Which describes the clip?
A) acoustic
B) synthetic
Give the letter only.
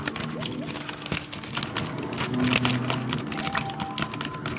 A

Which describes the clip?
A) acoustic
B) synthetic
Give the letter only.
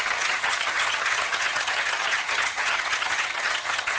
B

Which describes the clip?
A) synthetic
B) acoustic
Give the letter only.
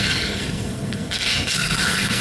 A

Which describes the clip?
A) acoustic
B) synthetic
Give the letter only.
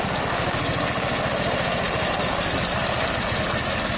A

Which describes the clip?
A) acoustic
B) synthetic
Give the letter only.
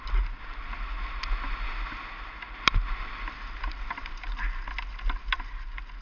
A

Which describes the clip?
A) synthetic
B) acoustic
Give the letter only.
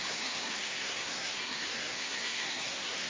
A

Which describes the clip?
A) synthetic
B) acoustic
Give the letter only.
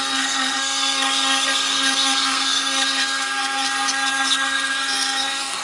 A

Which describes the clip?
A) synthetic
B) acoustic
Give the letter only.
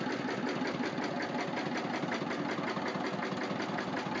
B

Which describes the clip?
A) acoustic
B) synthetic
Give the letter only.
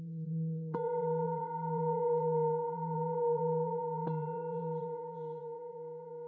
B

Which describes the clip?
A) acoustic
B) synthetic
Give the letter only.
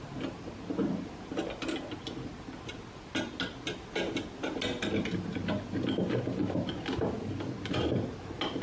A